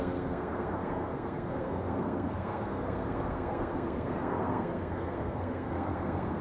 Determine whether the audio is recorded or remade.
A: remade